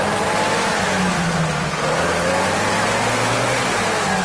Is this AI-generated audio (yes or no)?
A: no